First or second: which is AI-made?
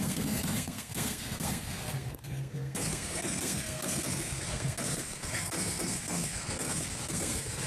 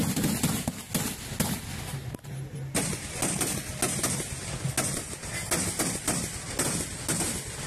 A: first